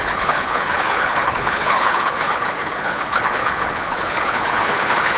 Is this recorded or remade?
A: remade